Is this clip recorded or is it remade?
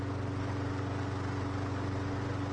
recorded